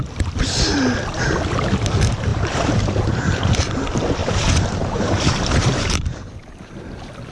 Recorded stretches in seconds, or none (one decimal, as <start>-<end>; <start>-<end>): 0.0-2.3; 3.2-4.2; 6.5-7.3